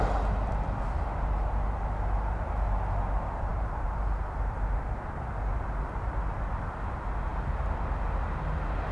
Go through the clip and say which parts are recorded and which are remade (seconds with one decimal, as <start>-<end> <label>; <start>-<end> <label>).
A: 0.0-3.5 recorded; 3.5-5.2 remade; 5.2-8.9 recorded

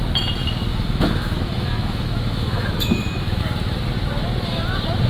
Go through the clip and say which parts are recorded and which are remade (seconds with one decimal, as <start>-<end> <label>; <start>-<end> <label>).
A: 0.0-0.7 recorded; 0.7-3.4 remade; 3.4-5.1 recorded

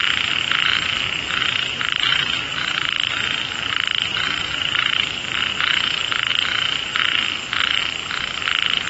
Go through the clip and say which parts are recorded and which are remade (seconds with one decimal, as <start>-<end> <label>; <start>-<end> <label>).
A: 0.0-1.4 recorded; 1.4-5.5 remade; 5.5-8.9 recorded

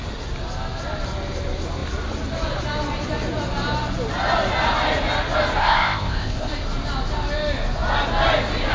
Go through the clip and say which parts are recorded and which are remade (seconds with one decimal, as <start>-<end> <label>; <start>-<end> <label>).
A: 0.0-5.6 recorded; 5.6-6.5 remade; 6.5-8.7 recorded

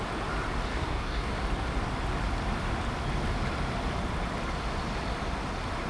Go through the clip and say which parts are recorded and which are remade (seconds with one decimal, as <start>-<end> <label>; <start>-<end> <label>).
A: 0.0-0.7 recorded; 0.7-1.3 remade; 1.3-5.9 recorded

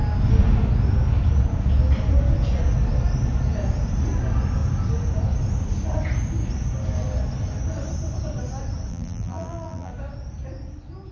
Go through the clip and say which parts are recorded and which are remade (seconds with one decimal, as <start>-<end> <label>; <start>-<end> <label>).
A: 0.0-8.9 recorded; 8.9-9.9 remade; 9.9-11.1 recorded

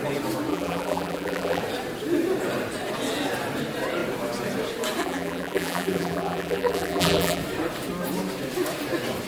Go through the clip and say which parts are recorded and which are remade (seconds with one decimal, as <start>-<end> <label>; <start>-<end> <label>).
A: 0.0-0.5 recorded; 0.5-1.6 remade; 1.6-5.0 recorded; 5.0-7.4 remade; 7.4-9.3 recorded